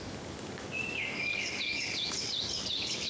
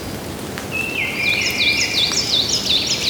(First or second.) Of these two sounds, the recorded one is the second